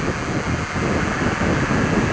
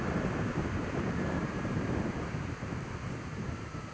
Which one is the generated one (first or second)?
second